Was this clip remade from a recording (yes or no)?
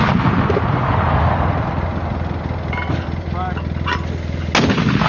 no